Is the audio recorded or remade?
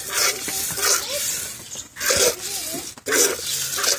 recorded